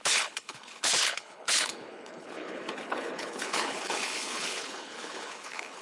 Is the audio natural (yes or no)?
no